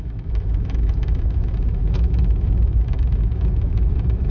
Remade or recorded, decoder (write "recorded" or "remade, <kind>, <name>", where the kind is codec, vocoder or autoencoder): remade, autoencoder, DAC-VAE